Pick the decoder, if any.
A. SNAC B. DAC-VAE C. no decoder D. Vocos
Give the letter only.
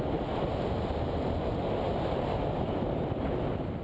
C